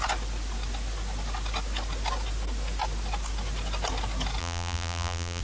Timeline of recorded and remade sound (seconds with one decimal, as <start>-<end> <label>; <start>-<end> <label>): 0.0-4.4 recorded; 4.4-5.4 remade